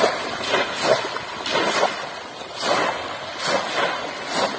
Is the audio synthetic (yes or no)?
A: no